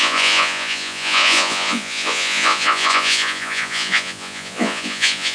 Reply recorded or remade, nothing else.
remade